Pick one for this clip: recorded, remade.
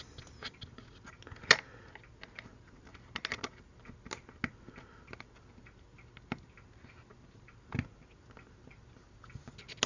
recorded